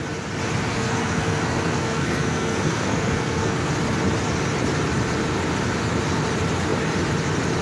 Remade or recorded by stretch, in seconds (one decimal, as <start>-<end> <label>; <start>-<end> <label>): 0.0-0.7 recorded; 0.7-3.7 remade; 3.7-7.6 recorded